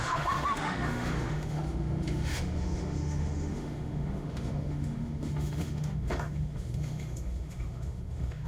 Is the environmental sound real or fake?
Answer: fake